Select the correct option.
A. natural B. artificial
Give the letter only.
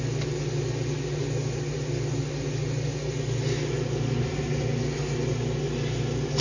A